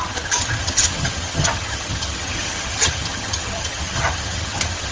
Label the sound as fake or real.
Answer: fake